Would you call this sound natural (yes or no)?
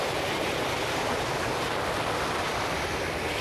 yes